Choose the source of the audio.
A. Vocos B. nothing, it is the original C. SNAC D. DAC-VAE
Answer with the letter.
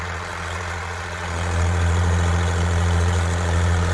A